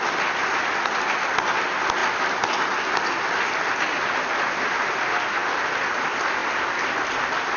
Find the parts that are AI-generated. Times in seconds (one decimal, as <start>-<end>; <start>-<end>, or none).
none